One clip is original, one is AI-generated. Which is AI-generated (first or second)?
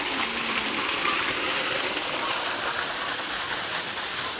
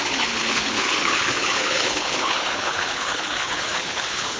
second